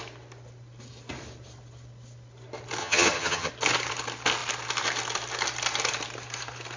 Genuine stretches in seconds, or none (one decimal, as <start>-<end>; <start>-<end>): 0.0-2.8; 3.5-6.8